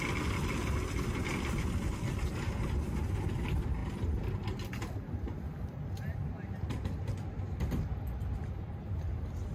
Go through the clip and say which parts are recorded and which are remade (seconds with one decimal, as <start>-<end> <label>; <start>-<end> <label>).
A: 0.0-0.6 recorded; 0.6-3.4 remade; 3.4-3.8 recorded; 3.8-6.2 remade; 6.2-9.5 recorded